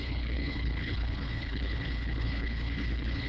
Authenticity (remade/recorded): remade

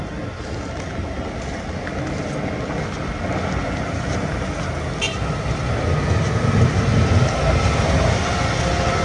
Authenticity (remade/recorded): recorded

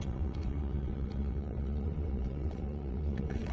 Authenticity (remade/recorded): remade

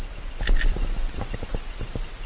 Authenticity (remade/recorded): recorded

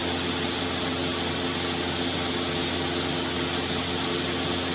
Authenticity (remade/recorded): recorded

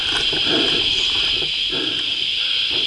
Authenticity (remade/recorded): recorded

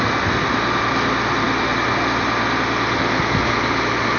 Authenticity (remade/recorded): recorded